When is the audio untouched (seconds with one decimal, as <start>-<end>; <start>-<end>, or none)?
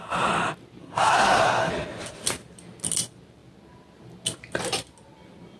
0.0-0.8; 1.7-5.6